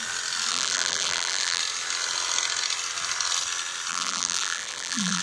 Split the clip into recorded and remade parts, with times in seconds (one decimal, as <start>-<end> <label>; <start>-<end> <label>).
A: 0.0-0.5 recorded; 0.5-1.6 remade; 1.6-3.9 recorded; 3.9-5.2 remade